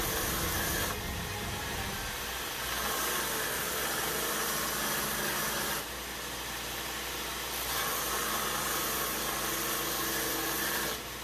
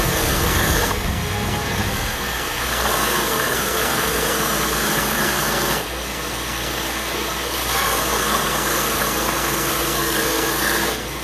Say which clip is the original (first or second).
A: first